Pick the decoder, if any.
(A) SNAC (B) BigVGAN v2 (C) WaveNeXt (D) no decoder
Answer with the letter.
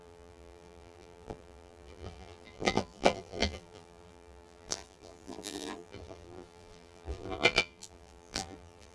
B